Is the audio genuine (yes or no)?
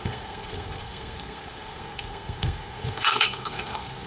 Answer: no